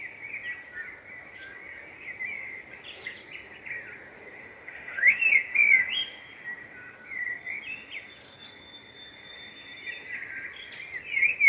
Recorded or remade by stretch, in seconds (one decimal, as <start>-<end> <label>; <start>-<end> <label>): 0.0-4.4 recorded; 4.4-5.2 remade; 5.2-11.5 recorded